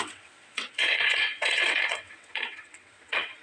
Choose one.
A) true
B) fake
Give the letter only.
B